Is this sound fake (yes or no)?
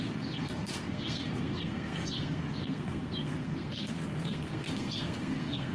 yes